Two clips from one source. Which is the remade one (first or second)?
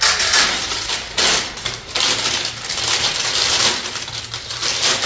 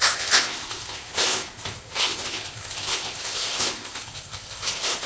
second